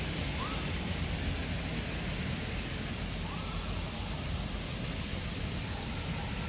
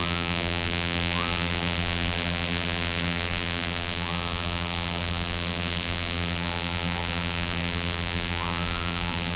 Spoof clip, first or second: second